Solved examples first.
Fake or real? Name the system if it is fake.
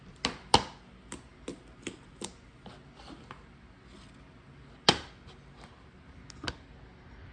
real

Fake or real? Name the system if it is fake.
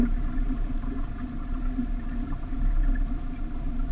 fake, vocoder, BigVGAN v2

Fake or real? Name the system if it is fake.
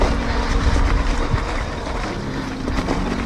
real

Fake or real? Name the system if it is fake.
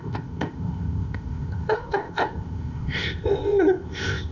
fake, codec, ZipCodec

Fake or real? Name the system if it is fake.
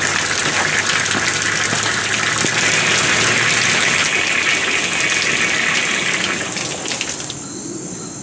real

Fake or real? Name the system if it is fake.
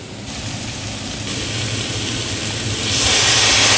real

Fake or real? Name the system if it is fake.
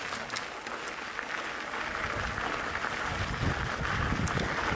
real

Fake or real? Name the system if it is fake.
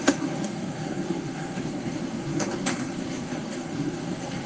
fake, codec, SNAC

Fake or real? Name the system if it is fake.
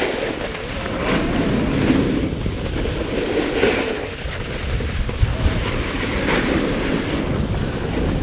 real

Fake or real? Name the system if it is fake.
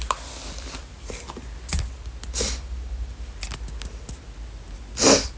real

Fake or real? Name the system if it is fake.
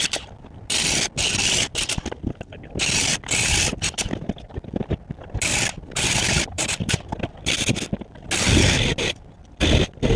real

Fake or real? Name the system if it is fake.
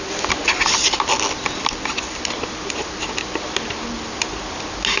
real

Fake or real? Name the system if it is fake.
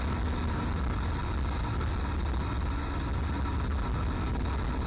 real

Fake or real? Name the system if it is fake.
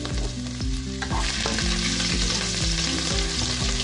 real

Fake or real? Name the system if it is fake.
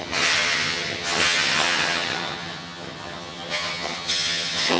fake, vocoder, HiFi-GAN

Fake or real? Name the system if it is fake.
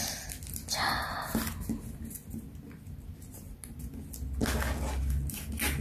real